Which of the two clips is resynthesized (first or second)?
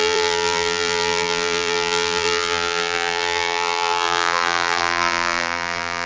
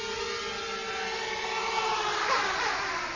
first